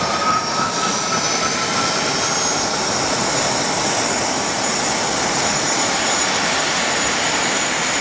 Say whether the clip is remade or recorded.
remade